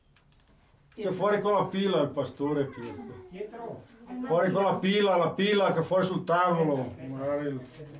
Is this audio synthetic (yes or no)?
no